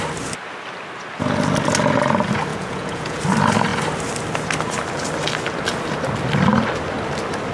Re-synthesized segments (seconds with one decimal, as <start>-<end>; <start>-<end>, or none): 2.5-3.2